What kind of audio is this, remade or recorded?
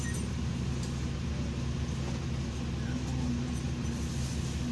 recorded